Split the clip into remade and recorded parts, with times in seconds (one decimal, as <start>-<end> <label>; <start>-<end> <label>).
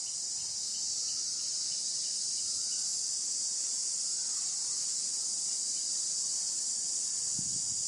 0.0-7.9 recorded